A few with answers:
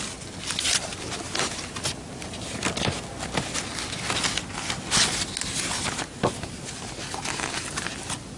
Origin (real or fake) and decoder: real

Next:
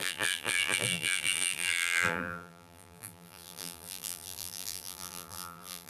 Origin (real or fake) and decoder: fake, vocoder, BigVGAN v2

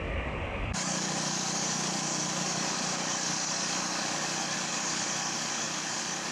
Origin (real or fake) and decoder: fake, codec, DAC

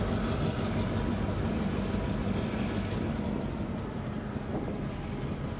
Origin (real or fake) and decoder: real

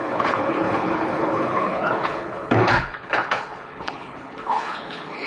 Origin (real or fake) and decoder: fake, codec, HILCodec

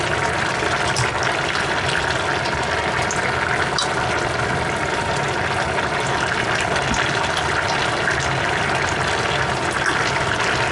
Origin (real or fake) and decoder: real